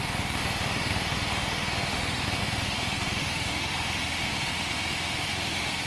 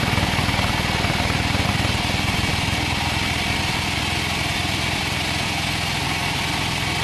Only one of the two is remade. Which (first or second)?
first